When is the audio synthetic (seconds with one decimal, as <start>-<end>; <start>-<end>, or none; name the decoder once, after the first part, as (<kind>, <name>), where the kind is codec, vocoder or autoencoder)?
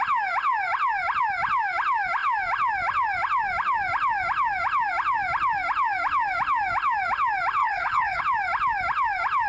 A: 7.6-8.2 (codec, HILCodec)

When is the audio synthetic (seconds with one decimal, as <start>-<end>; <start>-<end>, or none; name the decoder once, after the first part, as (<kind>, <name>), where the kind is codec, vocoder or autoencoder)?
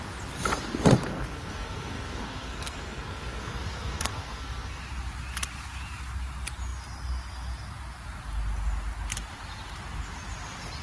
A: 1.1-4.8 (codec, SNAC)